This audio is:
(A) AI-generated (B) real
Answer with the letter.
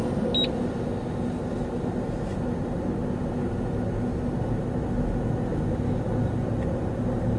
B